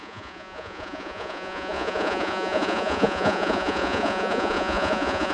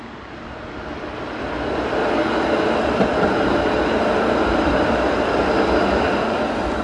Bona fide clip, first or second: second